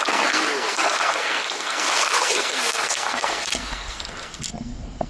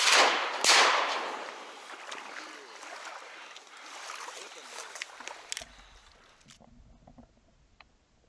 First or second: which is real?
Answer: second